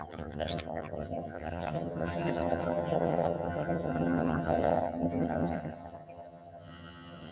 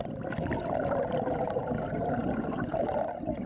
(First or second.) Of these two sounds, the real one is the second